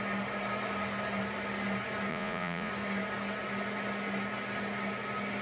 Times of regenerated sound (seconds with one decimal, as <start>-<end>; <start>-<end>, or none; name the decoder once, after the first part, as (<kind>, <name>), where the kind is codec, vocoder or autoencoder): 2.1-2.7 (vocoder, Vocos)